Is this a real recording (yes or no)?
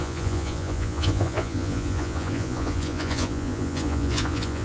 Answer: no